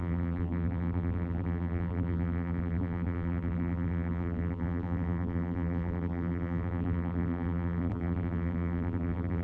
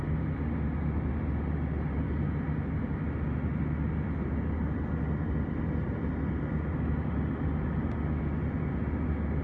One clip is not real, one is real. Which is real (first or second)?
second